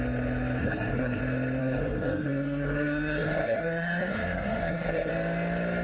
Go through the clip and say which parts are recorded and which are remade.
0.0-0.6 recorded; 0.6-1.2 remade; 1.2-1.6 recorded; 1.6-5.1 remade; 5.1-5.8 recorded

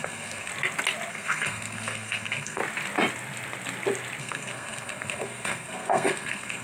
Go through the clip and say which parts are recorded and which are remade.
0.0-0.5 remade; 0.5-1.1 recorded; 1.1-2.6 remade; 2.6-4.2 recorded; 4.2-6.6 remade

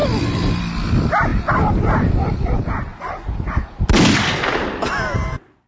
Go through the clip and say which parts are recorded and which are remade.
0.0-5.7 recorded